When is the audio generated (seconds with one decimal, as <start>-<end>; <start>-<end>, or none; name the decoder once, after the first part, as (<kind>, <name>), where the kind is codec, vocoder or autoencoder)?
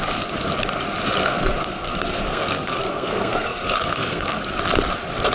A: 1.2-4.4 (codec, SNAC)